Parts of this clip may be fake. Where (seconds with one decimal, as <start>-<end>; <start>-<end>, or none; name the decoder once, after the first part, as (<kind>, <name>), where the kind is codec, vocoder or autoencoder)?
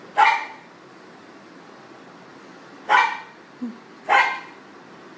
none